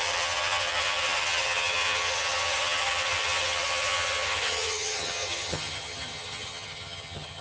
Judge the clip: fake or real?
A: fake